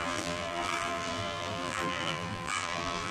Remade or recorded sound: remade